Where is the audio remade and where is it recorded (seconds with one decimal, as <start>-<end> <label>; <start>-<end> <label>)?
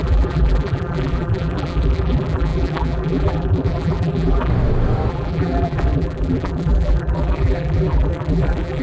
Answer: 0.0-4.5 remade; 4.5-5.1 recorded; 5.1-8.8 remade